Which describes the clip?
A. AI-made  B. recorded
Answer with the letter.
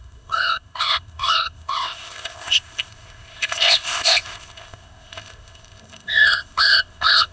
A